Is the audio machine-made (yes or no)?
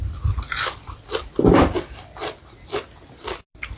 no